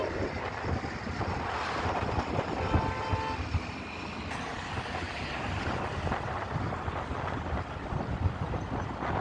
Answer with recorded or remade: recorded